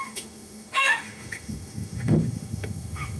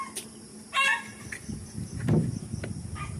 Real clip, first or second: second